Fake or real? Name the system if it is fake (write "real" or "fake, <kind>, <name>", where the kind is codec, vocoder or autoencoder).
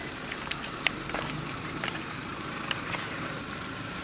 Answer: fake, vocoder, BigVGAN v2